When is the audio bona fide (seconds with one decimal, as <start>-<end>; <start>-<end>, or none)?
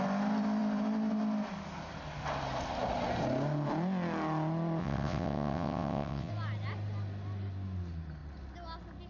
0.0-4.8; 6.3-9.1